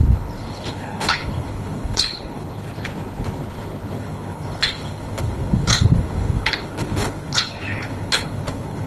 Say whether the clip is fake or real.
fake